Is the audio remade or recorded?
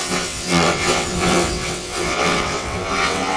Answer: remade